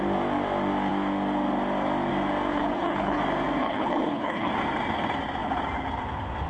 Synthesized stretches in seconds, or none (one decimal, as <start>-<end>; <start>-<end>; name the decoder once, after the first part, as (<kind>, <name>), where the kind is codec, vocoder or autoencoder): 2.5-3.2 (codec, HILCodec); 3.6-4.5